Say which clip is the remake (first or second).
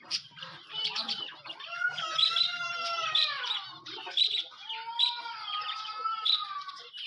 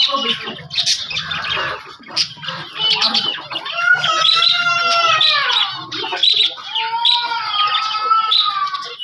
first